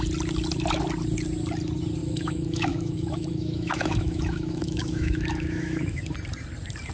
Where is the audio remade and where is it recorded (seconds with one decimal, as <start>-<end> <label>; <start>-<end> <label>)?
0.0-2.0 recorded; 2.0-6.0 remade; 6.0-6.9 recorded